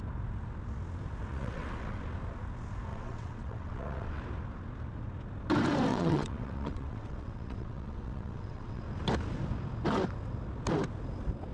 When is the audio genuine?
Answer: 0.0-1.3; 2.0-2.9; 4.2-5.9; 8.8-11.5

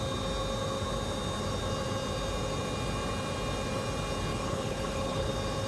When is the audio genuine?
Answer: 0.0-4.3; 5.3-5.7

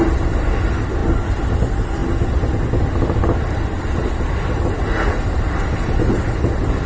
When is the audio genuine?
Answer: 0.0-6.9

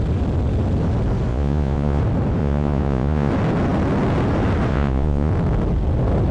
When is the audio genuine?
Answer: 0.0-1.3; 2.0-2.4; 3.3-4.7; 5.3-6.3